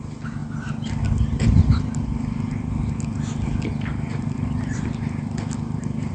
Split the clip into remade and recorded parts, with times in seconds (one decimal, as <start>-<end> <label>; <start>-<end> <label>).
0.0-6.1 recorded

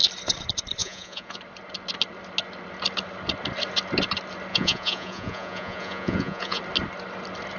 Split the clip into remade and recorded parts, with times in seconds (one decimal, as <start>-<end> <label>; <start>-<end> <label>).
0.0-0.8 recorded; 0.8-1.4 remade; 1.4-4.5 recorded; 4.5-6.6 remade; 6.6-7.6 recorded